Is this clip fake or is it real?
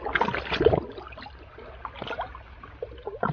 real